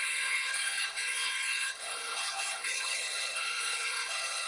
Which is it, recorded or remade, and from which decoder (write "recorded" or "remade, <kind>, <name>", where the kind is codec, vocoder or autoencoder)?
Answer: remade, codec, HILCodec